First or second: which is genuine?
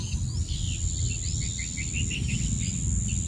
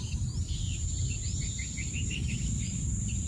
first